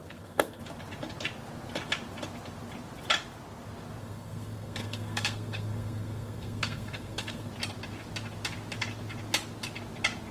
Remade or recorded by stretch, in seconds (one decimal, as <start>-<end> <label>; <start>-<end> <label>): 0.0-0.6 remade; 0.6-4.0 recorded; 4.0-7.5 remade; 7.5-10.3 recorded